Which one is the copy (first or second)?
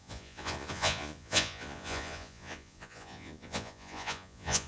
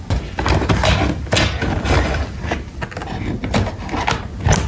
first